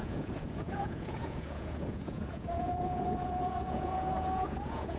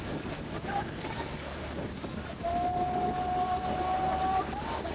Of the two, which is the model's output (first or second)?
first